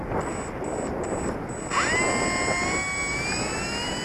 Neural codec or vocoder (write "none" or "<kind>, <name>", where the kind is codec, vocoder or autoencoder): none